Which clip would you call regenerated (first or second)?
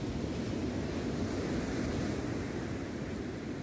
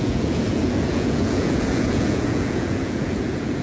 second